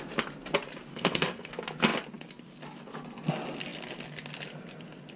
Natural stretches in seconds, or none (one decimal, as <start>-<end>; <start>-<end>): 0.0-0.9; 1.5-5.2

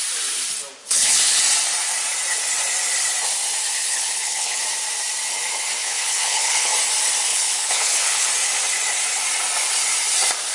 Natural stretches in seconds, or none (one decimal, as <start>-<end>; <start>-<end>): 0.0-0.8; 1.4-3.8; 4.6-5.8; 6.7-7.3; 8.3-10.5

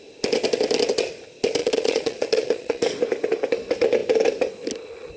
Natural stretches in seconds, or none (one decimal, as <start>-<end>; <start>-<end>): 0.0-1.6; 2.8-5.2

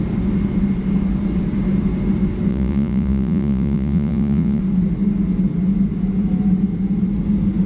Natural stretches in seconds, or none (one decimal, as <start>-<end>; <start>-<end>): 0.0-2.5; 4.6-7.7